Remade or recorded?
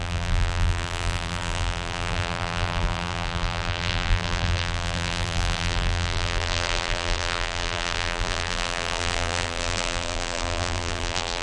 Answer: remade